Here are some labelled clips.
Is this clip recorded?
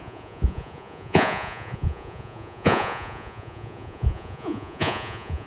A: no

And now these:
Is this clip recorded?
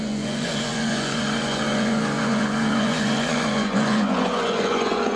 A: no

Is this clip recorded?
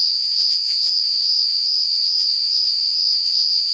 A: no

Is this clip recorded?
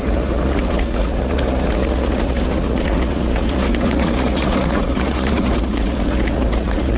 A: no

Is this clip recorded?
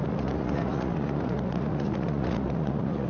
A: no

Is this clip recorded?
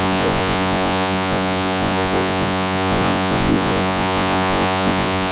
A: no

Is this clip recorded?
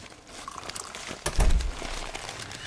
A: yes